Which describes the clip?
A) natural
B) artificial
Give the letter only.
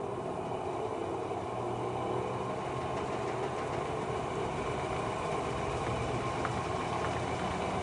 A